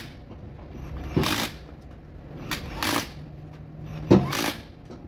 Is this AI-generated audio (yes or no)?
no